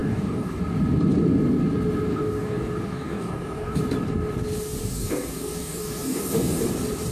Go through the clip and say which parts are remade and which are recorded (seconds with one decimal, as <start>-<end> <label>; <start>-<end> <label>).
0.0-0.6 remade; 0.6-2.1 recorded; 2.1-3.8 remade; 3.8-4.8 recorded; 4.8-6.6 remade; 6.6-7.1 recorded